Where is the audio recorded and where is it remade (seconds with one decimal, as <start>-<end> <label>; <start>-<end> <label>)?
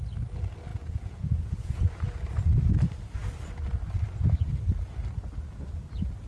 0.0-0.7 recorded; 0.7-1.8 remade; 1.8-6.3 recorded